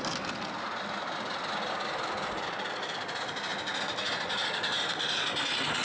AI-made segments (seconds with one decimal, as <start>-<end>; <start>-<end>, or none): none